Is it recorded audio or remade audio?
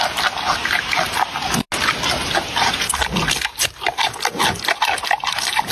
recorded